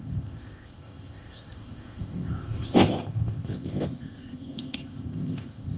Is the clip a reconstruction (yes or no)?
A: yes